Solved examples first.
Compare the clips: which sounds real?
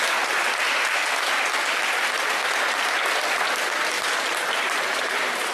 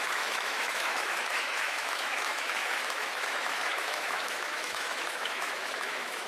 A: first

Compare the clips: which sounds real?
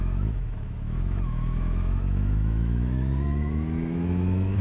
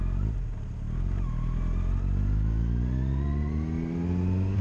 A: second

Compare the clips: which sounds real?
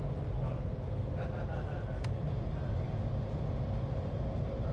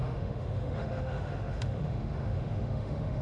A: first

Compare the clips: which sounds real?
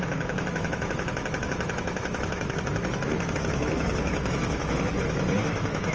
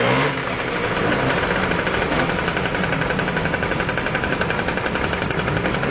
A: second